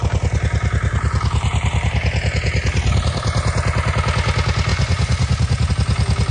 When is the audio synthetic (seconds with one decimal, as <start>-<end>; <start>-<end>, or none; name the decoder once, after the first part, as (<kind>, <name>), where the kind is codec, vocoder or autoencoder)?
4.7-5.7 (vocoder, Vocos)